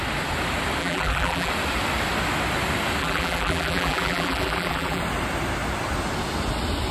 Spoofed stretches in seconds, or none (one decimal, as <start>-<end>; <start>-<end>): 0.8-1.5; 3.0-5.0